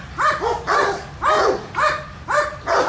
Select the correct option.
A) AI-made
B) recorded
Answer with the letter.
B